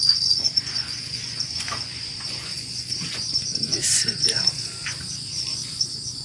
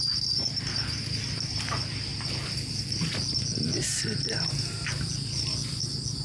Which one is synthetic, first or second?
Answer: first